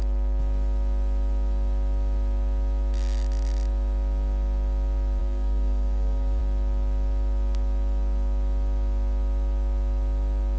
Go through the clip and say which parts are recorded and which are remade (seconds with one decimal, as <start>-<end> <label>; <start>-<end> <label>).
0.0-5.2 recorded; 5.2-6.4 remade; 6.4-10.6 recorded